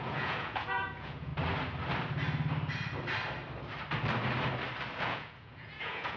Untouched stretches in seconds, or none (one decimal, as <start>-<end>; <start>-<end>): 1.3-5.0